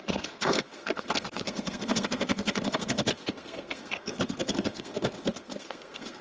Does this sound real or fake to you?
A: fake